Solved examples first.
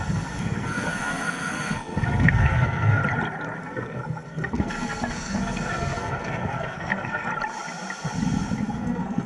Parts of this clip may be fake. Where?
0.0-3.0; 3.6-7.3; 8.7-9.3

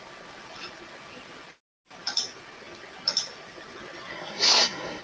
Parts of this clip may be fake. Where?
4.1-5.0

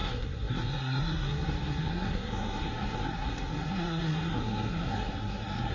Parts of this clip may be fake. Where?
0.0-5.7

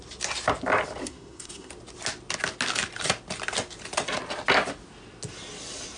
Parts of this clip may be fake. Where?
1.0-1.7

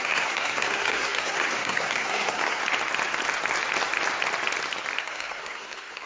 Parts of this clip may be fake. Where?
0.0-2.6; 5.0-6.1

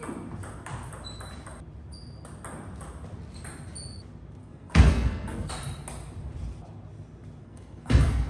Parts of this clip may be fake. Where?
4.4-5.5; 7.4-8.3